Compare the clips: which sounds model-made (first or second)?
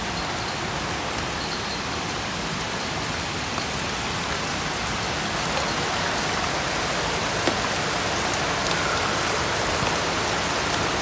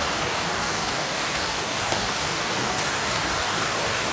second